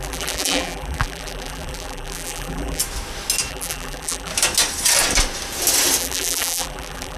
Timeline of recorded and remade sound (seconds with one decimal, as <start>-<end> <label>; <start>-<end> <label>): 0.0-2.8 remade; 2.8-3.5 recorded; 3.5-4.3 remade; 4.3-6.0 recorded; 6.0-7.2 remade